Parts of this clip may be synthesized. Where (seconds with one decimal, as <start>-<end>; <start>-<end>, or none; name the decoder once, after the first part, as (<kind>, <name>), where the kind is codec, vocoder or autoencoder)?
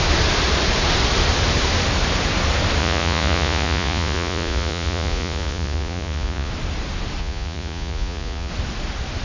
2.8-6.5 (vocoder, Vocos); 7.2-8.5